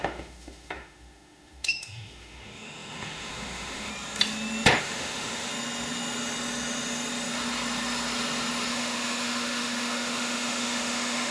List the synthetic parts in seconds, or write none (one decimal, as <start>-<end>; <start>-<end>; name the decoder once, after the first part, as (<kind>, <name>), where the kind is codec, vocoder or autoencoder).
0.0-3.9 (autoencoder, DAC-VAE); 4.8-5.5; 8.7-11.3

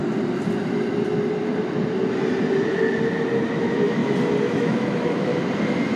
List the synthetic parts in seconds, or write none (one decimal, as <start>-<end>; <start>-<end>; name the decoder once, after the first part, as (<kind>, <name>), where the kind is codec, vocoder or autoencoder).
3.6-4.0 (autoencoder, DAC-VAE); 4.5-5.3

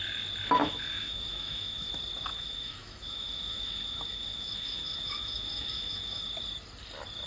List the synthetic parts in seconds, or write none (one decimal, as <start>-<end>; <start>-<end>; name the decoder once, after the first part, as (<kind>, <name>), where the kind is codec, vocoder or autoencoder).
0.6-1.9 (autoencoder, DAC-VAE); 2.3-6.2

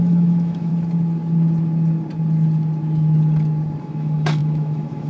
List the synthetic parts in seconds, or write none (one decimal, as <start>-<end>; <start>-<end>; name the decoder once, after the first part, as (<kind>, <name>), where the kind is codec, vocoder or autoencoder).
0.0-0.7 (autoencoder, DAC-VAE); 3.8-5.1

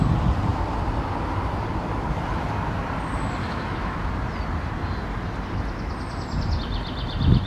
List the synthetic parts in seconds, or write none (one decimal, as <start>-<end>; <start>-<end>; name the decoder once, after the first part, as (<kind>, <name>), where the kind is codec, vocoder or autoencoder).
3.4-4.1 (autoencoder, DAC-VAE)

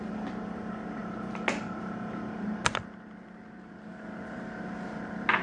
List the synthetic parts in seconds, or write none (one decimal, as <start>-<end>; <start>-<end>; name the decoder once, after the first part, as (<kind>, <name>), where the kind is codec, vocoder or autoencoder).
none